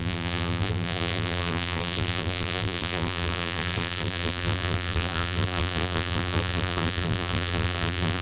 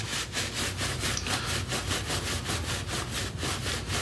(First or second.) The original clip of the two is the second